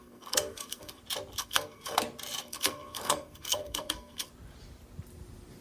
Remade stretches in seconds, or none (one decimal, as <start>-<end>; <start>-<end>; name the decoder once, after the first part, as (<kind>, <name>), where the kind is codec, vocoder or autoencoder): 0.0-1.0 (codec, SNAC); 1.4-2.0; 2.4-4.3